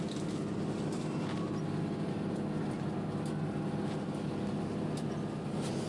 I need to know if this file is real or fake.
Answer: real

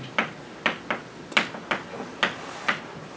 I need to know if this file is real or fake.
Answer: real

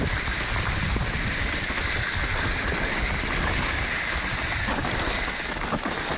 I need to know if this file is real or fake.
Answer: real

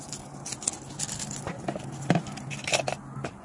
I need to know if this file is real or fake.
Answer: real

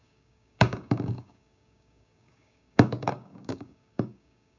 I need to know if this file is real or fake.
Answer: fake